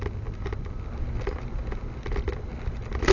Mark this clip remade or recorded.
recorded